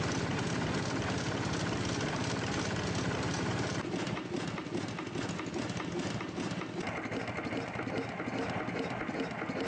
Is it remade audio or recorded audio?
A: recorded